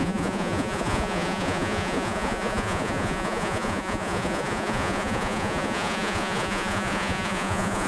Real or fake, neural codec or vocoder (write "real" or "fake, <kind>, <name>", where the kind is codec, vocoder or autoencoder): fake, vocoder, Vocos